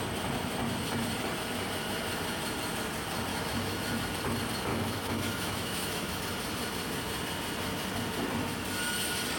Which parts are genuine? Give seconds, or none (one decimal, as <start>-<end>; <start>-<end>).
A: 0.0-3.3; 3.9-4.7; 6.2-9.4